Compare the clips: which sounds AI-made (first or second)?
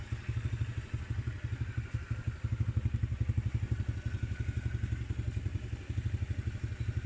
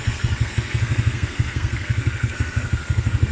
second